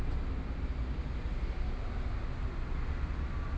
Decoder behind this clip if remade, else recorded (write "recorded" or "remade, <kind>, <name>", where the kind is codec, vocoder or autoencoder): recorded